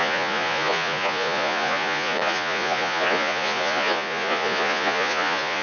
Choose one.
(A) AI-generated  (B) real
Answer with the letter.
A